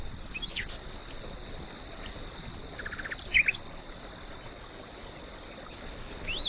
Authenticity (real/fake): real